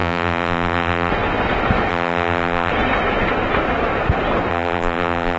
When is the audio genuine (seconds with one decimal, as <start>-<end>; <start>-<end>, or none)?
1.1-1.9; 2.7-4.5